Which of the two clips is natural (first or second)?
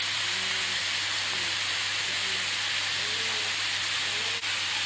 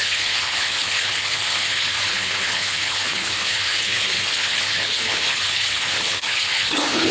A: first